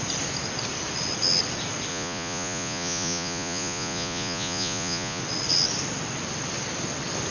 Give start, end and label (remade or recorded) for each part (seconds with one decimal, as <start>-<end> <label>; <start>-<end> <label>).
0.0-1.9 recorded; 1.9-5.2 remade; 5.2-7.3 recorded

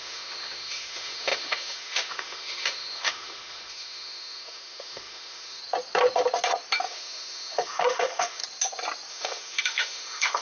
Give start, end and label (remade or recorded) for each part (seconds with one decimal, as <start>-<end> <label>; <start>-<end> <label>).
0.0-5.6 remade; 5.6-6.8 recorded; 6.8-8.4 remade; 8.4-9.1 recorded; 9.1-10.4 remade

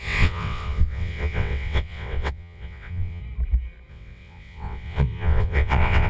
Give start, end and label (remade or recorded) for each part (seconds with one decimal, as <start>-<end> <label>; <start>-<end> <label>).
0.0-3.2 remade; 3.2-3.9 recorded; 3.9-6.1 remade

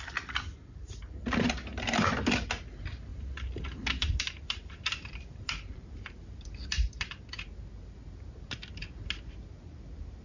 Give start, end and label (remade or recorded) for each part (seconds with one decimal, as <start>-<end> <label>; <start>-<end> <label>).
0.0-3.1 recorded; 3.1-7.1 remade; 7.1-10.2 recorded

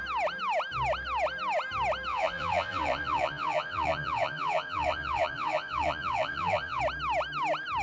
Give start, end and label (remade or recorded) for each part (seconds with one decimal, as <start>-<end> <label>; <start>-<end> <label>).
0.0-2.1 recorded; 2.1-6.8 remade; 6.8-7.8 recorded

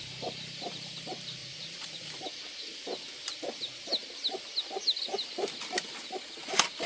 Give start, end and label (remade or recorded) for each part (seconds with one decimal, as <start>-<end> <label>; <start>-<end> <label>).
0.0-1.4 recorded; 1.4-2.2 remade; 2.2-6.9 recorded

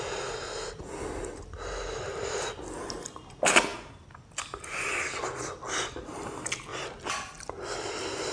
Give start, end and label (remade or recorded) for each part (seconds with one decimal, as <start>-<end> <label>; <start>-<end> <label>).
0.0-8.3 recorded

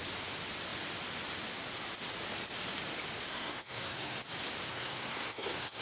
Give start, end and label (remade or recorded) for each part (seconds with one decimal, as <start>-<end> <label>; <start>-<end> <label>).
0.0-3.3 recorded; 3.3-4.2 remade; 4.2-4.7 recorded; 4.7-5.8 remade